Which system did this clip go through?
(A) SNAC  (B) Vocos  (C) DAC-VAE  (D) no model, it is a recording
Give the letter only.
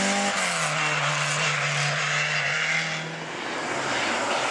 D